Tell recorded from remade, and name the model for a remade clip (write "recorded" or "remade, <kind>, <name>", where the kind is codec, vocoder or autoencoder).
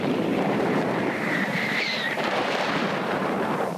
remade, vocoder, BigVGAN v2